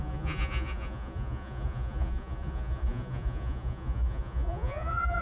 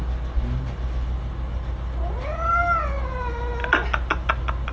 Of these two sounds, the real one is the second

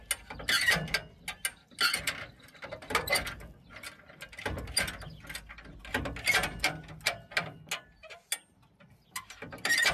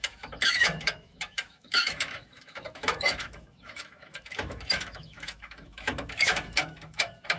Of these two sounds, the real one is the first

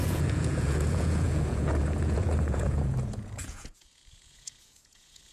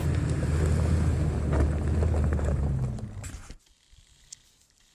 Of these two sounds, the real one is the second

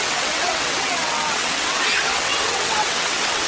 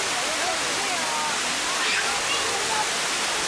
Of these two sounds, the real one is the second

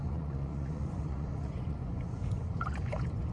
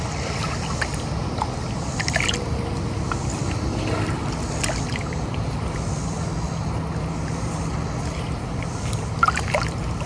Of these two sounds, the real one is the second